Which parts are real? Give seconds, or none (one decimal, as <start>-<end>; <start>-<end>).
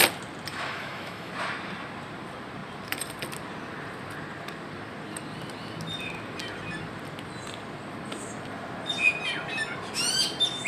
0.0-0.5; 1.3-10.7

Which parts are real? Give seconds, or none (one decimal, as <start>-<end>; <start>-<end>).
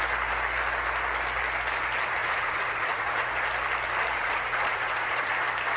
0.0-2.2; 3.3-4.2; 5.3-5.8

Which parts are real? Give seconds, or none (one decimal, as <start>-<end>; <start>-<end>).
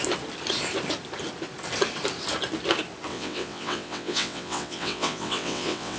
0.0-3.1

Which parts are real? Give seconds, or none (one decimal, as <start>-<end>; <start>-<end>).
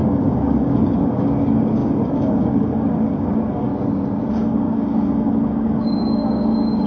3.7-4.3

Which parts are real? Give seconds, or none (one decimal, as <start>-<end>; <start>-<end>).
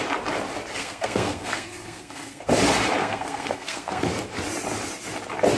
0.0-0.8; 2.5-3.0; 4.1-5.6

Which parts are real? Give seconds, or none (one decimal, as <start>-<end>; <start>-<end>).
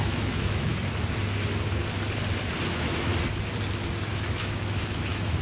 0.7-2.7; 3.1-4.1